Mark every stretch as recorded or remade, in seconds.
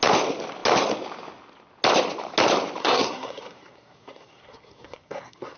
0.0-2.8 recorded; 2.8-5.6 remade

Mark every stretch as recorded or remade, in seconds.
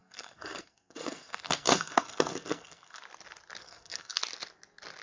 0.0-3.0 remade; 3.0-3.6 recorded; 3.6-4.2 remade; 4.2-5.0 recorded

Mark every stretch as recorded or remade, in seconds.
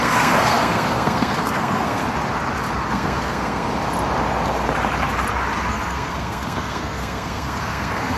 0.0-2.0 remade; 2.0-2.9 recorded; 2.9-3.7 remade; 3.7-5.7 recorded; 5.7-8.2 remade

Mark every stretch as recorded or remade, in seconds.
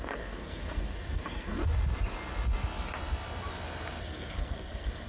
0.0-1.6 remade; 1.6-4.0 recorded; 4.0-5.1 remade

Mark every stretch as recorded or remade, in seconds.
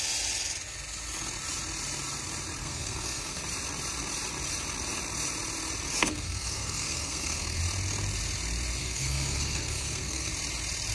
0.0-2.6 recorded; 2.6-3.4 remade; 3.4-6.0 recorded; 6.0-7.6 remade; 7.6-8.8 recorded; 8.8-10.3 remade; 10.3-10.9 recorded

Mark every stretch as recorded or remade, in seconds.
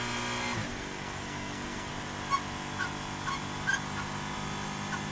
0.0-0.7 recorded; 0.7-1.9 remade; 1.9-5.1 recorded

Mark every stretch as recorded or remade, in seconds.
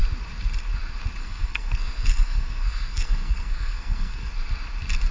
0.0-1.2 recorded; 1.2-4.3 remade; 4.3-5.1 recorded